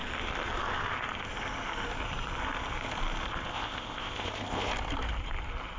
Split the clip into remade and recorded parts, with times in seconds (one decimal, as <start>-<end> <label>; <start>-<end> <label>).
0.0-3.5 recorded; 3.5-4.7 remade; 4.7-5.8 recorded